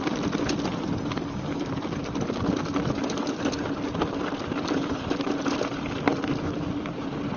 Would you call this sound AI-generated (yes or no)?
no